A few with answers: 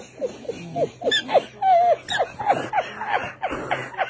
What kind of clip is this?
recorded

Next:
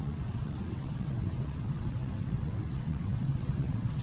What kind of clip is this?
remade